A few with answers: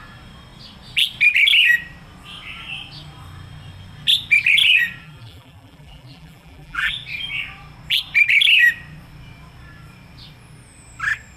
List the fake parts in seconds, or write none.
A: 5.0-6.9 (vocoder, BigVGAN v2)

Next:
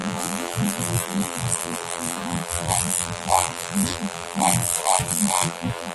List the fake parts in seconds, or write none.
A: 0.0-5.9 (vocoder, BigVGAN v2)